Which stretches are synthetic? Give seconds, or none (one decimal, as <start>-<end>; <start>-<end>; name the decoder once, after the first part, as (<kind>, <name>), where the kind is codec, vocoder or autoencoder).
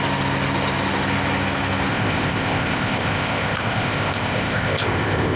1.9-5.4 (codec, ZipCodec)